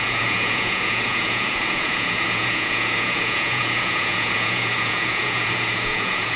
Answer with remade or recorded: remade